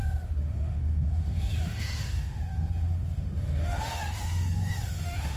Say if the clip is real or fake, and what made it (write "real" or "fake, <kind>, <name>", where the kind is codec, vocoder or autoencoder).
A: fake, autoencoder, DAC-VAE